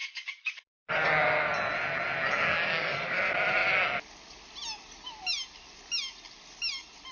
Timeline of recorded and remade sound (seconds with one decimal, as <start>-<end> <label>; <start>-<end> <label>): 0.0-0.9 remade; 0.9-2.5 recorded; 2.5-3.2 remade; 3.2-7.1 recorded